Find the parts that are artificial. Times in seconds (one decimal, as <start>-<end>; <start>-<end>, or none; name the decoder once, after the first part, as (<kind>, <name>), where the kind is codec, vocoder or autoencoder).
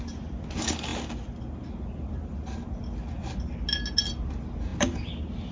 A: none